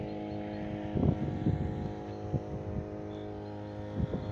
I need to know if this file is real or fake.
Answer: real